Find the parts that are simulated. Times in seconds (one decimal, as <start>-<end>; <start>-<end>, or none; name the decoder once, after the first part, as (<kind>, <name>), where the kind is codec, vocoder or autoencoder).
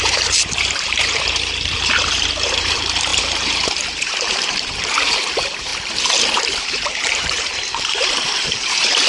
0.0-5.7 (vocoder, BigVGAN v2); 6.6-9.1